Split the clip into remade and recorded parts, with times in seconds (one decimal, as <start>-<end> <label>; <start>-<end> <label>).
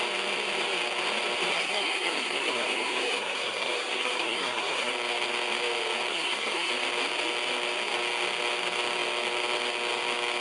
0.0-1.5 recorded; 1.5-4.9 remade; 4.9-6.1 recorded; 6.1-6.7 remade; 6.7-10.4 recorded